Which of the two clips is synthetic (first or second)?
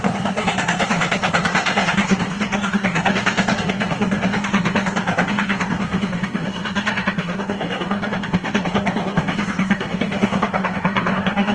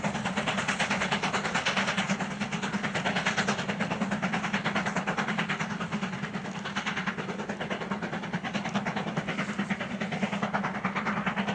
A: first